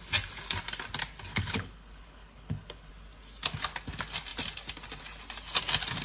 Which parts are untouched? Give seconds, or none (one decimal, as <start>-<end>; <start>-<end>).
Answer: 0.0-1.3; 2.9-6.0